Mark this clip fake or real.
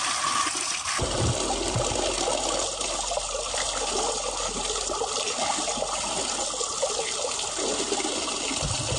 real